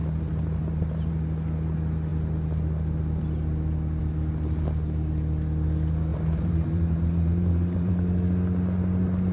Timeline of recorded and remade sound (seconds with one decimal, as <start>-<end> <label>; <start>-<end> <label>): 0.0-1.1 remade; 1.1-6.1 recorded; 6.1-7.9 remade; 7.9-9.3 recorded